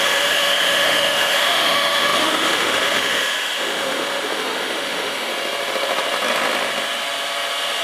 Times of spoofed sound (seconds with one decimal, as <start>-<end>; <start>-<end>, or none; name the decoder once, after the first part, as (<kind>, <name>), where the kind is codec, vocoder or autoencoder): 0.0-5.3 (autoencoder, DAC-VAE)